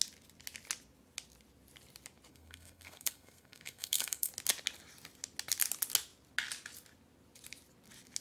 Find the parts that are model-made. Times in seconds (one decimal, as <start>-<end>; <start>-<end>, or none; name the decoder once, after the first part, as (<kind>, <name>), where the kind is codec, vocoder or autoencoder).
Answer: 2.3-4.3 (codec, SNAC)